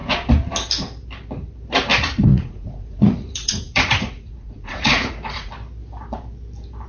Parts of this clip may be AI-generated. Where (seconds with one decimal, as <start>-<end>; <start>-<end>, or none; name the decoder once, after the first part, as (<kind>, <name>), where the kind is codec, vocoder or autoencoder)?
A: 2.3-5.5 (vocoder, Vocos)